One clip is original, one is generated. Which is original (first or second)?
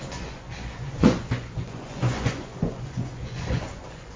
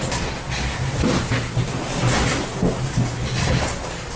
second